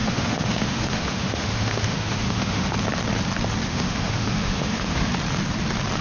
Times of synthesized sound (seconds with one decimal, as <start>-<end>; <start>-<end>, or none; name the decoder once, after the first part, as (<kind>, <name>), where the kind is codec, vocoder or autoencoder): 0.0-2.7 (autoencoder, DAC-VAE); 3.7-5.1